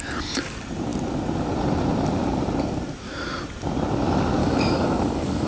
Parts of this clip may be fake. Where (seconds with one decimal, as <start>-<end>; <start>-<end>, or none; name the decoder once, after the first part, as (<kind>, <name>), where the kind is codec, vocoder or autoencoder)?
4.4-5.5 (codec, DAC)